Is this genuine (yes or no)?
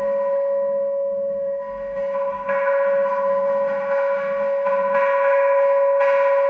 no